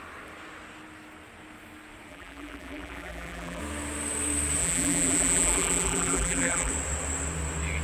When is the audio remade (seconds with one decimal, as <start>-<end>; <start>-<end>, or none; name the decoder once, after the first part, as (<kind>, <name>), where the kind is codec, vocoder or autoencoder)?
2.1-3.6 (vocoder, BigVGAN v2); 4.6-6.7